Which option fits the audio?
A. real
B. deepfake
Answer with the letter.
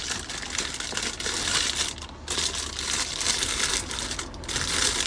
A